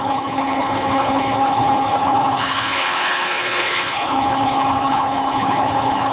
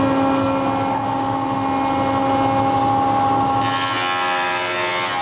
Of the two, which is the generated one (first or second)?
first